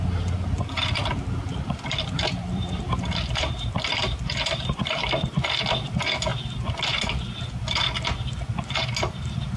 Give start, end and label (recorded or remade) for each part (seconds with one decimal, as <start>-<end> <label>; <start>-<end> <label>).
0.0-1.0 recorded; 1.0-5.2 remade; 5.2-9.6 recorded